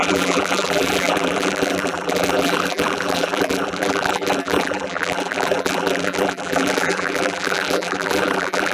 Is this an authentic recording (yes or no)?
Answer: no